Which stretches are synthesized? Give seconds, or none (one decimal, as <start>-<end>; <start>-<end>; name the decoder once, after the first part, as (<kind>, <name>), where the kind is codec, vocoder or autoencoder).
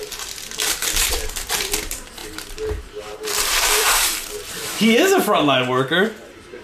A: 0.8-1.3 (vocoder, BigVGAN v2); 2.2-6.6